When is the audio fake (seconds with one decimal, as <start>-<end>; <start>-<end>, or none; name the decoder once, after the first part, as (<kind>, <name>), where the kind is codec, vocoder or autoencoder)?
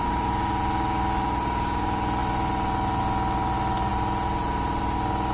none